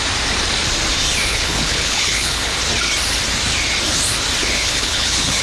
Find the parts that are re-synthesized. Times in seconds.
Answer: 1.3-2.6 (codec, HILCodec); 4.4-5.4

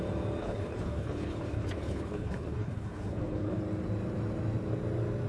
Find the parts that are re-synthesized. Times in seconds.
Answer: 0.4-3.6 (codec, HILCodec)

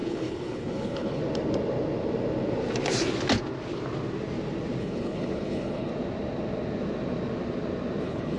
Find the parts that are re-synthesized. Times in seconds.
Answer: 0.0-1.2 (codec, HILCodec); 4.8-5.9; 8.0-8.4

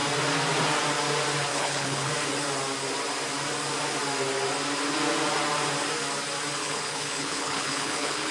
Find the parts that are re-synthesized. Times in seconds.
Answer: 1.5-2.1 (codec, HILCodec); 6.6-8.3

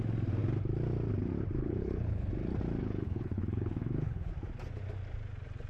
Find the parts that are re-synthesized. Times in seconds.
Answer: 1.6-2.3 (codec, HILCodec); 2.8-4.3